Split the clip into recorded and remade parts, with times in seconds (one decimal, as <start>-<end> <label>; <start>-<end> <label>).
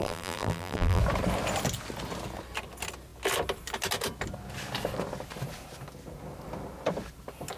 0.0-1.0 remade; 1.0-7.6 recorded